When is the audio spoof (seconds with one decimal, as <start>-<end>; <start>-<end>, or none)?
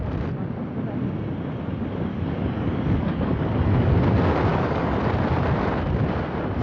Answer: 2.1-3.9; 4.5-5.0